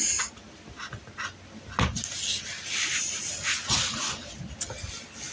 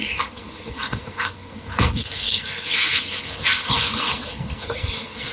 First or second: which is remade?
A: second